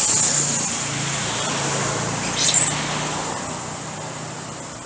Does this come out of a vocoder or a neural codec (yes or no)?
no